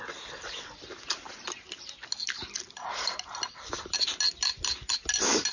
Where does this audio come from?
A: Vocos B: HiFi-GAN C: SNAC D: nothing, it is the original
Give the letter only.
D